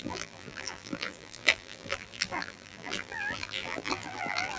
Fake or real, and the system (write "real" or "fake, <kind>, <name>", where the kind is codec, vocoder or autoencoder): fake, vocoder, BigVGAN v2